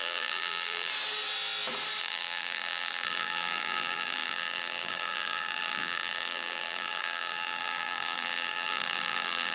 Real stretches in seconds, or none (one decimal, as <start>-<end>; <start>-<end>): 0.9-2.0

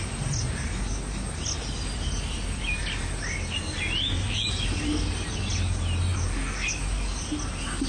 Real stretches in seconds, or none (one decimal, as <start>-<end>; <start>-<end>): 0.0-7.9

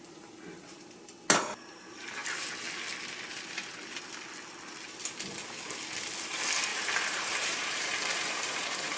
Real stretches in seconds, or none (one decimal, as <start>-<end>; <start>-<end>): 0.0-6.7; 8.6-9.0